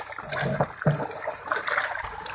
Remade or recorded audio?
recorded